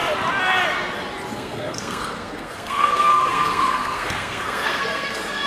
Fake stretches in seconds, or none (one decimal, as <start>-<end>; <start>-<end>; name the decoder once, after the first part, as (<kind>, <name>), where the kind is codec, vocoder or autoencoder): 1.3-5.5 (codec, SNAC)